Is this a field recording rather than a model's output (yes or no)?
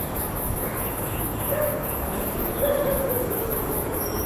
no